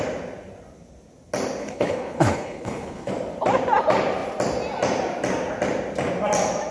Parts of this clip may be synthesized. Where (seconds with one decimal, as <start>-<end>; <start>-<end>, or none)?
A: 1.6-3.1